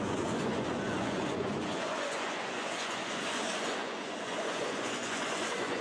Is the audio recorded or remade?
remade